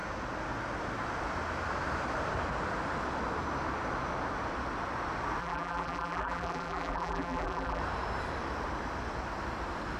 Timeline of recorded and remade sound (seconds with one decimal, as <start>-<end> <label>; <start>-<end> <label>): 0.0-5.4 recorded; 5.4-7.8 remade; 7.8-10.0 recorded